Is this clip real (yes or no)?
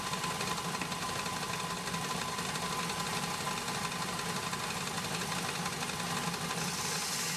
yes